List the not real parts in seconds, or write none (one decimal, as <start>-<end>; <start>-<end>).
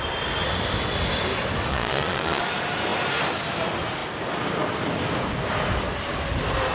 1.7-2.4